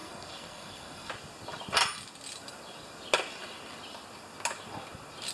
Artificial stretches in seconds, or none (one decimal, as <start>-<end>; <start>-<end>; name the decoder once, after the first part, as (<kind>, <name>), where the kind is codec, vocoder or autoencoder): 0.0-1.1 (codec, SNAC)